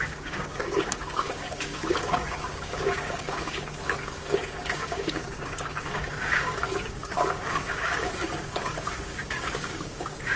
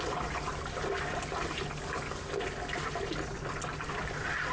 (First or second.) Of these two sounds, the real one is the second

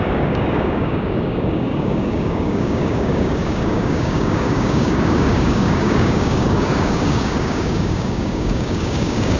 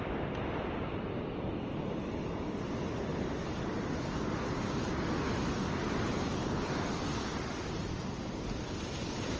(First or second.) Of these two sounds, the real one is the second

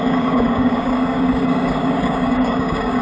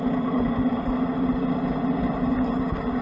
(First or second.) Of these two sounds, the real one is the second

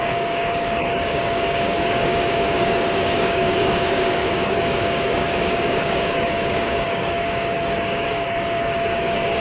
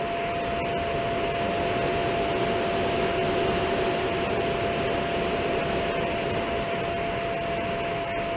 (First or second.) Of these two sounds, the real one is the second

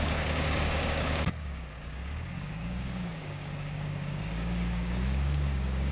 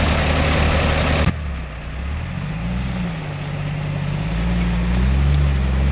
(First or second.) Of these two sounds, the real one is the second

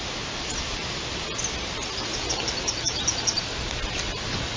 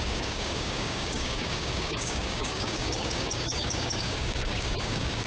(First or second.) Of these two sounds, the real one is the first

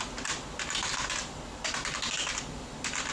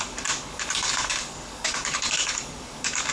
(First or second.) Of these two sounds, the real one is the first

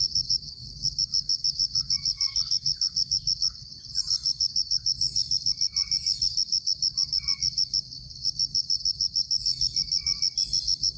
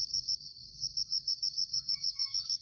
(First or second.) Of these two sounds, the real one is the first